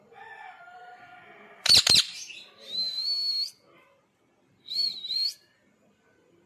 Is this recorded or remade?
recorded